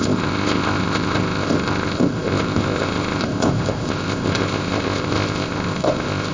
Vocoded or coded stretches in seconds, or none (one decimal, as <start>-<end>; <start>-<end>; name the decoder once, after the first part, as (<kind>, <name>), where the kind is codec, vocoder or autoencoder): 0.0-6.3 (codec, ZipCodec)